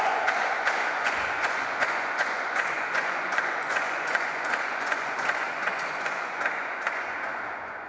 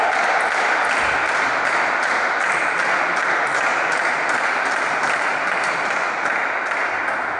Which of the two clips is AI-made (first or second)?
first